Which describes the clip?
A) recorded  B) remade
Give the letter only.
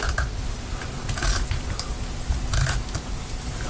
A